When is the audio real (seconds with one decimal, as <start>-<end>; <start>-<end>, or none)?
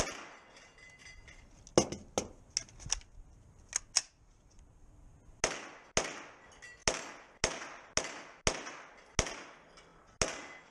0.0-10.7